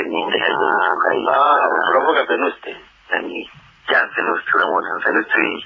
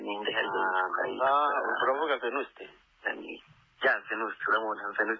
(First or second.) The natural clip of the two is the second